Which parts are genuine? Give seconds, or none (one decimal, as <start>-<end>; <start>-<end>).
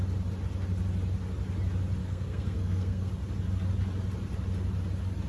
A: 0.0-2.0; 3.1-5.3